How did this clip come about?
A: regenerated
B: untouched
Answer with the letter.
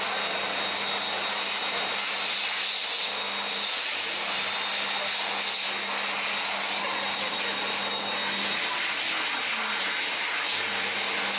B